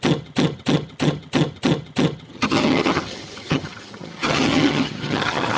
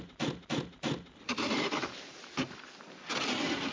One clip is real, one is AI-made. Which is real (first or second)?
second